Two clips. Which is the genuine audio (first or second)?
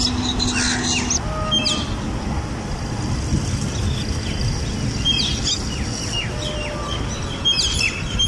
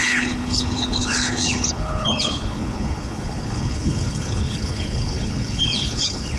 first